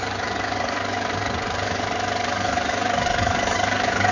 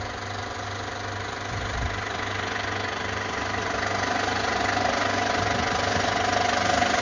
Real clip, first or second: second